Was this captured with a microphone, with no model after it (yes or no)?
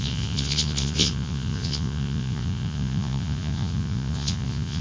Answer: no